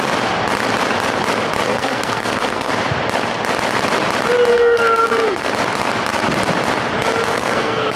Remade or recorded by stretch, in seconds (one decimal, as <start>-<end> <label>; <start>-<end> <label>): 0.0-1.7 recorded; 1.7-2.7 remade; 2.7-4.5 recorded; 4.5-5.5 remade; 5.5-7.3 recorded; 7.3-8.0 remade